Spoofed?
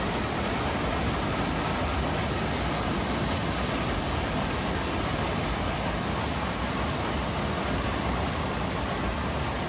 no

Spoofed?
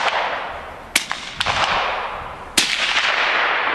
no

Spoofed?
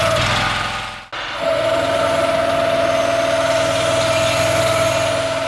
no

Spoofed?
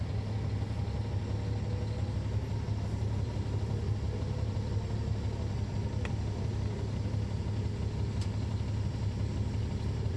no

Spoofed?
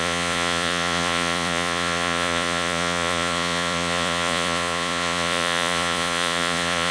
yes